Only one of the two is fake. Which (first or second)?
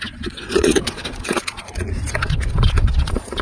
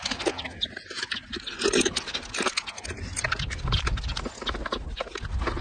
first